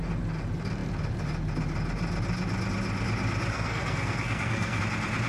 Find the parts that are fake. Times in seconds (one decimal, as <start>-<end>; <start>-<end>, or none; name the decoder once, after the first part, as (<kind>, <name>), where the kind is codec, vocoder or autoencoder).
3.5-4.8 (codec, SNAC)